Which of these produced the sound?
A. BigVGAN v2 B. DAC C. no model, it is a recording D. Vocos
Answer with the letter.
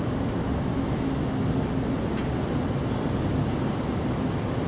C